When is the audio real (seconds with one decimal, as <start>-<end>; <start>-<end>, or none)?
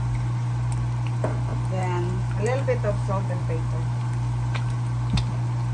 0.0-5.7